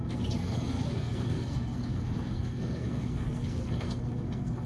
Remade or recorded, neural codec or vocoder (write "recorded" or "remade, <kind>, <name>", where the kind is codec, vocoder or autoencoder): remade, codec, SNAC